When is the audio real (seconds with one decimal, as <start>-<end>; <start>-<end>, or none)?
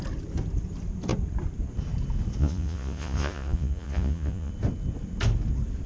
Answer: 0.0-2.4; 4.5-5.9